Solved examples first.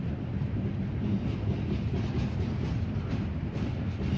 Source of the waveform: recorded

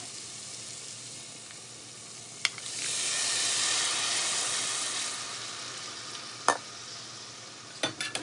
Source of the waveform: recorded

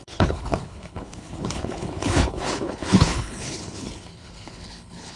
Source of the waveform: remade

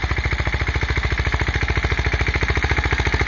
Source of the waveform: recorded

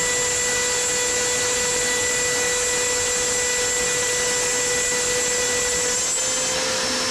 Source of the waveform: recorded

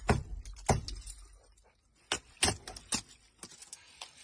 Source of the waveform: recorded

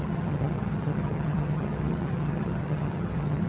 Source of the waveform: remade